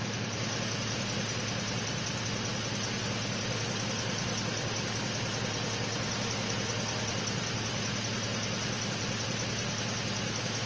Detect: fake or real real